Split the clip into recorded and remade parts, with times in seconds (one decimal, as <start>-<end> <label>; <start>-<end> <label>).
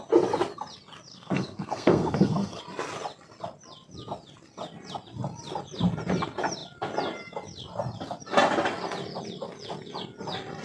0.0-1.1 recorded; 1.1-2.6 remade; 2.6-10.6 recorded